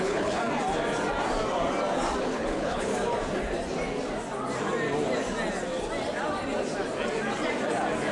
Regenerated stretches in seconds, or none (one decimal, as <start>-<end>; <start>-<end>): 0.0-0.4; 2.2-2.9